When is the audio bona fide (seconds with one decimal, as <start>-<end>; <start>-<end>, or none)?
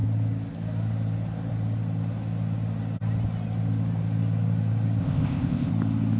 0.0-5.0; 5.7-6.2